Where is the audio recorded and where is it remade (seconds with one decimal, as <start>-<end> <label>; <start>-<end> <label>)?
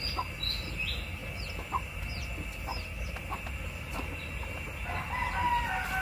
0.0-6.0 recorded